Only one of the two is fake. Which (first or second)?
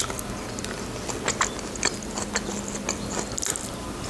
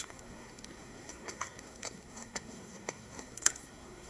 second